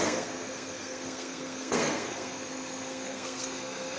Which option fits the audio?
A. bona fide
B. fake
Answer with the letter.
B